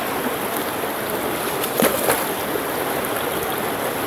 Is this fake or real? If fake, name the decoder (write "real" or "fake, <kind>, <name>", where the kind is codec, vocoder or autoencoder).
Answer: real